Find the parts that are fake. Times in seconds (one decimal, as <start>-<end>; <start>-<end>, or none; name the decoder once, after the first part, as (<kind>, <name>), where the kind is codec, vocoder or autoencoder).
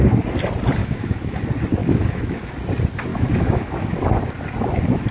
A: 0.8-1.4 (autoencoder, DAC-VAE); 1.8-2.5; 3.1-4.0